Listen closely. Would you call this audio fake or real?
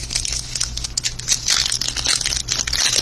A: real